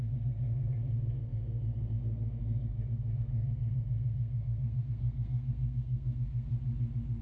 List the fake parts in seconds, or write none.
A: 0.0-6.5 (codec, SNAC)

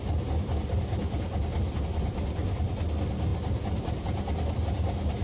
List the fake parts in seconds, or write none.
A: none

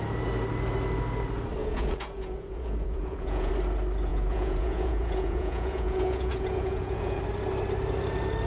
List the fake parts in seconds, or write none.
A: 1.6-3.5 (vocoder, Vocos); 4.1-7.2